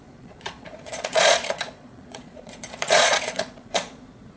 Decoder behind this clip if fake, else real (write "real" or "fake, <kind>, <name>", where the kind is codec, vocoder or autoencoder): fake, vocoder, Vocos